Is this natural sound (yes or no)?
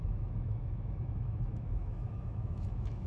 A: no